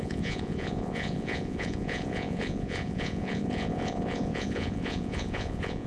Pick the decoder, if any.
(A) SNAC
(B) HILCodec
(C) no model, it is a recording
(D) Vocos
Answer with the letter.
D